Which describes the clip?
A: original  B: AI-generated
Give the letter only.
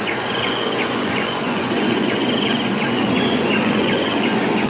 B